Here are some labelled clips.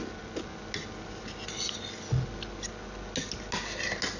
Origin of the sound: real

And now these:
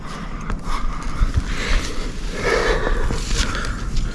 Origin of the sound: real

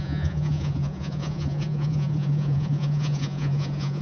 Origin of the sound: fake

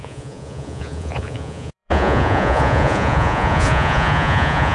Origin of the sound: fake